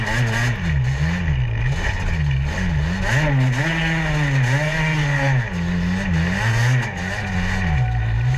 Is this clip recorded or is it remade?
recorded